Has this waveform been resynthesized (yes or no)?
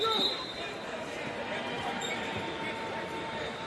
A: yes